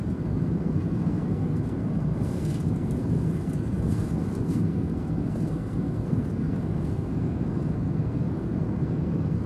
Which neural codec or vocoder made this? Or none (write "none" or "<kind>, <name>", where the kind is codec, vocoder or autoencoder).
codec, SNAC